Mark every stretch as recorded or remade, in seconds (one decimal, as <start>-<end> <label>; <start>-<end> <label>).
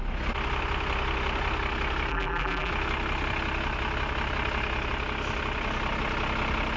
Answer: 0.0-2.1 recorded; 2.1-2.7 remade; 2.7-6.8 recorded